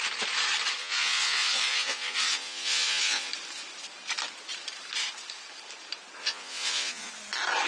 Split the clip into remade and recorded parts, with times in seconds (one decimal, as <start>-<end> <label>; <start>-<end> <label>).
0.0-0.8 recorded; 0.8-3.3 remade; 3.3-6.2 recorded; 6.2-7.1 remade; 7.1-7.7 recorded